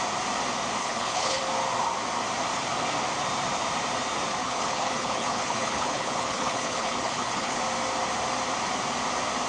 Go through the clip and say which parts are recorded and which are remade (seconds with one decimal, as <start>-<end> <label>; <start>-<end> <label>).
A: 0.0-0.8 recorded; 0.8-1.4 remade; 1.4-4.4 recorded; 4.4-7.6 remade; 7.6-9.5 recorded